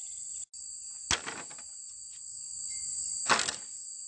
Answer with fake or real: real